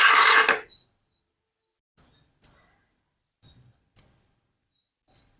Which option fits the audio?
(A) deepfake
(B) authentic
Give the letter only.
B